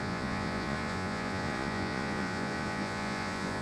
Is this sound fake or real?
fake